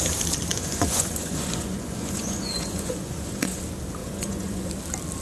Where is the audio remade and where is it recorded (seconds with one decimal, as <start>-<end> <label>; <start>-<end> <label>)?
0.0-0.5 recorded; 0.5-3.6 remade; 3.6-4.0 recorded; 4.0-4.7 remade; 4.7-5.2 recorded